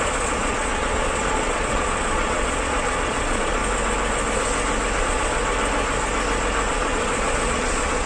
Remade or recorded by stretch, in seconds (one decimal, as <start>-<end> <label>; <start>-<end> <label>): 0.0-3.6 remade; 3.6-5.0 recorded; 5.0-5.4 remade; 5.4-6.7 recorded; 6.7-8.1 remade